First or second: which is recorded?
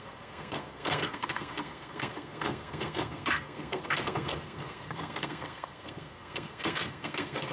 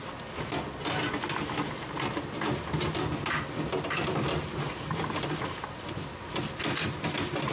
second